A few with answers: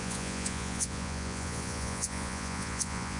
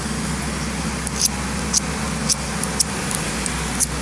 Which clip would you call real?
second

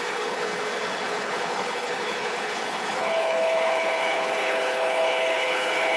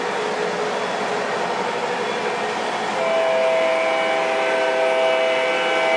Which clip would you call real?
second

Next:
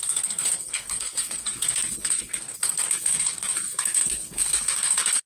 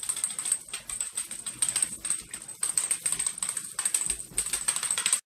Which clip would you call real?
second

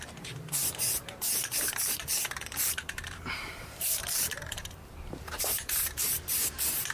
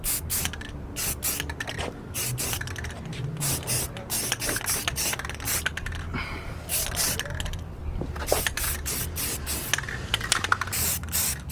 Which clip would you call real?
second